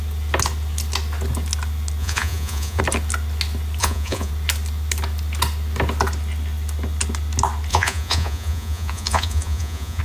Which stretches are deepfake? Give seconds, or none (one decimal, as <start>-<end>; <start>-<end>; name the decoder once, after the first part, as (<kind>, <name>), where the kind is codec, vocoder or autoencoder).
2.0-2.8 (vocoder, Vocos); 3.8-4.3; 7.7-10.0

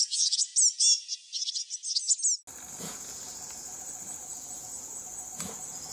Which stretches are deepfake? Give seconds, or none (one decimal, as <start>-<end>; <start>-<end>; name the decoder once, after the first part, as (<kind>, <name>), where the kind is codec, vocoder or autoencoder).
0.0-0.5 (vocoder, Vocos); 2.7-5.9